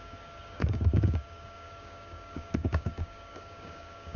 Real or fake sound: fake